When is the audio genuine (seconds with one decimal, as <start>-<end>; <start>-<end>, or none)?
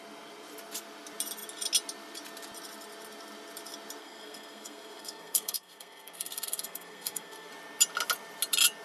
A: 0.0-4.0; 7.5-8.8